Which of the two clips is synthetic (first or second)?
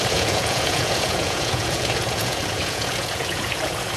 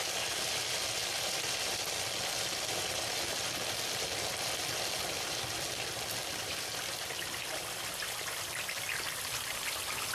first